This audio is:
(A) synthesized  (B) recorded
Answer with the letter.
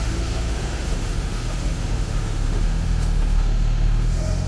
A